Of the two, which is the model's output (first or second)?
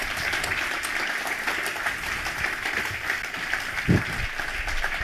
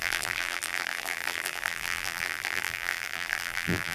second